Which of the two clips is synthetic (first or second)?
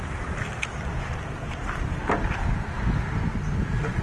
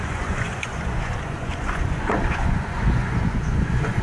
second